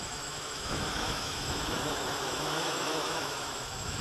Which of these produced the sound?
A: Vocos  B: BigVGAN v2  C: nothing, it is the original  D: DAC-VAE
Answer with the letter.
D